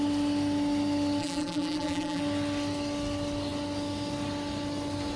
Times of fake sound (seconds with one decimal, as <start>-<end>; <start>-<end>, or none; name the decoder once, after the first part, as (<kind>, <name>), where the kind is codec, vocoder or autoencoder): 1.2-2.2 (vocoder, BigVGAN v2)